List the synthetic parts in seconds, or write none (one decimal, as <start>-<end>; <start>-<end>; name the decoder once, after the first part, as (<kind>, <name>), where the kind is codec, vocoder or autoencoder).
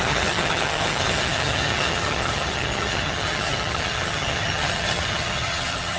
0.0-6.0 (vocoder, HiFi-GAN)